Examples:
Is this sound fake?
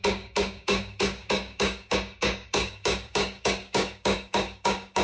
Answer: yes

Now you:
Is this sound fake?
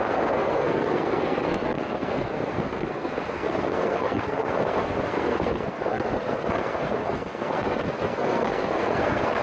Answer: yes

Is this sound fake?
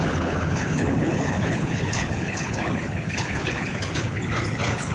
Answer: yes